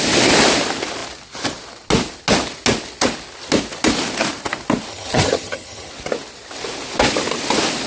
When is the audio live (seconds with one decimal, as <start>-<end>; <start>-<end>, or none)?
0.0-4.9; 5.9-7.9